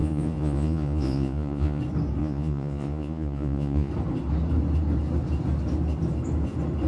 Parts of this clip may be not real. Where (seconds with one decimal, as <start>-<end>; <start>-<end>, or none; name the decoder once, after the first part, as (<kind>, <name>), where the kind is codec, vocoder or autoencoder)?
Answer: 0.0-1.8 (vocoder, Vocos); 2.2-3.9